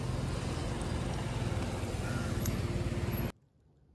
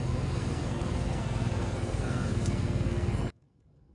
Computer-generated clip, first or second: second